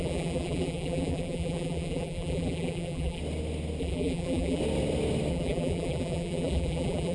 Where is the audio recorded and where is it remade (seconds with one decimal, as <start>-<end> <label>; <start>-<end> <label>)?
0.0-3.2 remade; 3.2-3.8 recorded; 3.8-4.6 remade; 4.6-5.3 recorded; 5.3-7.1 remade

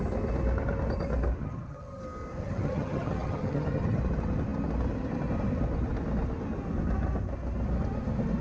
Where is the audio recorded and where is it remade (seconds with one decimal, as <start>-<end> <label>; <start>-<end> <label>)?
0.0-1.4 recorded; 1.4-2.0 remade; 2.0-2.4 recorded; 2.4-4.0 remade; 4.0-8.4 recorded